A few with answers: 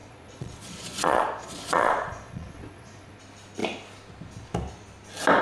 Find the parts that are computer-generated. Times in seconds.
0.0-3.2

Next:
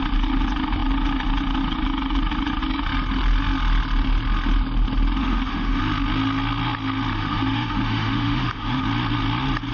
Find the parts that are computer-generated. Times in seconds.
5.2-5.8; 7.1-8.8

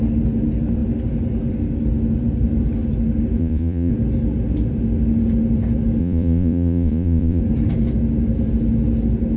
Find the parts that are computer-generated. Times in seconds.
3.4-3.9; 6.0-7.4

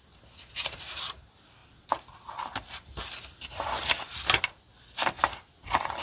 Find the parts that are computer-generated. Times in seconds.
none

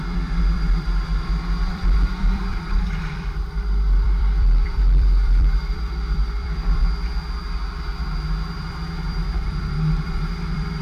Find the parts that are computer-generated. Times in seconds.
0.0-6.8; 8.5-10.8

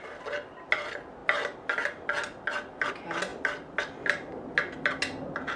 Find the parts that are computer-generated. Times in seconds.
none